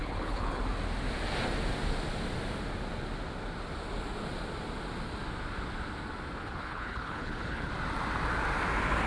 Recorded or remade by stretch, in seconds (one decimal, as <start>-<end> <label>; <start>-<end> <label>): 0.0-0.6 remade; 0.6-6.4 recorded; 6.4-7.7 remade; 7.7-9.1 recorded